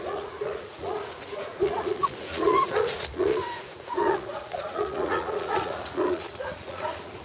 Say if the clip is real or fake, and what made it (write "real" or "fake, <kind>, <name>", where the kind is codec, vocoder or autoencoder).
fake, vocoder, Vocos